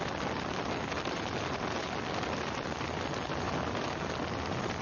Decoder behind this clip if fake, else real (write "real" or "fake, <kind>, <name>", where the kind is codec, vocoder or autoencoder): real